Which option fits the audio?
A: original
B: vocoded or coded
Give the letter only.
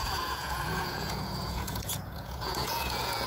B